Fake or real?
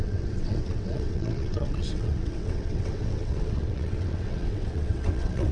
fake